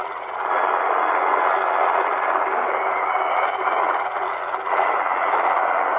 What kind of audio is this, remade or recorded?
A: recorded